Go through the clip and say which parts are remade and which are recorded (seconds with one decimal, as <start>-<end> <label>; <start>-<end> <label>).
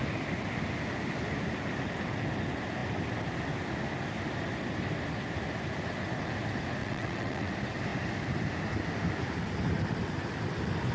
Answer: 0.0-6.8 recorded; 6.8-7.5 remade; 7.5-10.9 recorded